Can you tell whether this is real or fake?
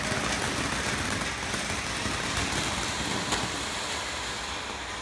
real